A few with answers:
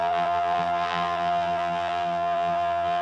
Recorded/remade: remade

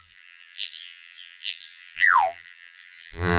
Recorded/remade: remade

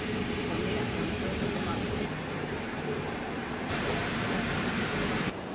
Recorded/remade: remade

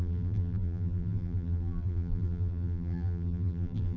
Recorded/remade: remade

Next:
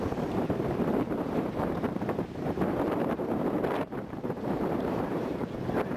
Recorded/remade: remade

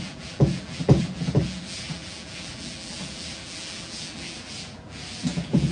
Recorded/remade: remade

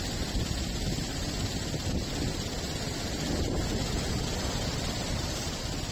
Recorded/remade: recorded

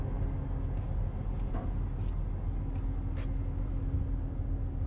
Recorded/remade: recorded